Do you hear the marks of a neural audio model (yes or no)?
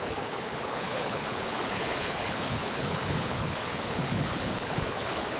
yes